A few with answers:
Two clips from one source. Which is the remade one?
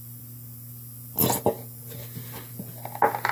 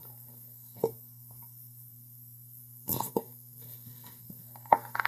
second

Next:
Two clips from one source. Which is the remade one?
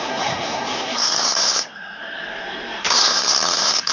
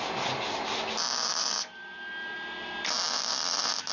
first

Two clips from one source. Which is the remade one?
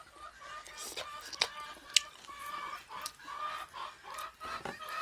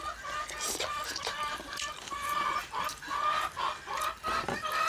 second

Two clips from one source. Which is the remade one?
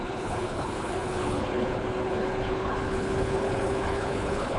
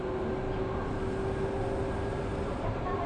first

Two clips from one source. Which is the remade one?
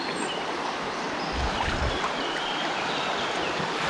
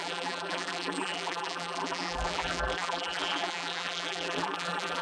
second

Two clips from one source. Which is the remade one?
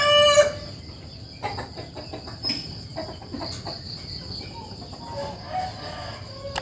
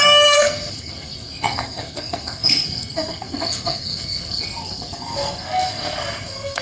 second